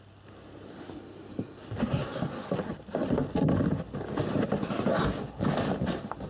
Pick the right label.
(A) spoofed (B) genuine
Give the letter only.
B